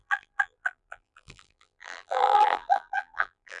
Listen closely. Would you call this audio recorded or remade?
remade